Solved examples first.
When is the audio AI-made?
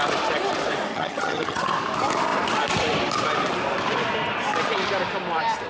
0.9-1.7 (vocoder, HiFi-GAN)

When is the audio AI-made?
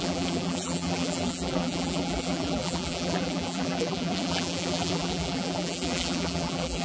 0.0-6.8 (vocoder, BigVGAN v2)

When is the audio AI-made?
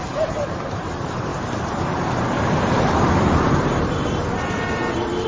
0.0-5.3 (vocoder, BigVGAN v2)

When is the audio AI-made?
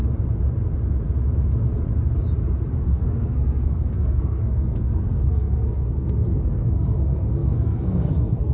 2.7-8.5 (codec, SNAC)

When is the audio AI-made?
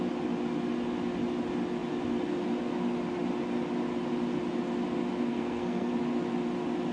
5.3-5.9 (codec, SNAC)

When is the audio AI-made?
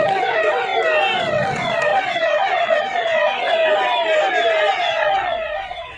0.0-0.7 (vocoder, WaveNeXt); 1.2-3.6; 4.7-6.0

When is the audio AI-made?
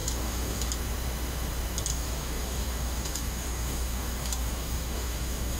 0.0-0.7 (codec, DAC); 1.9-5.6